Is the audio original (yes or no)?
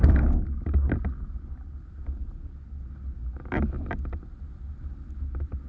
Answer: yes